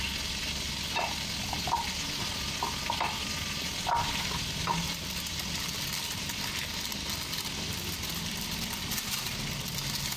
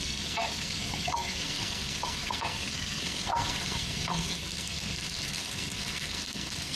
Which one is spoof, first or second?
second